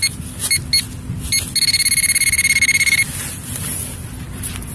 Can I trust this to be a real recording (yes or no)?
yes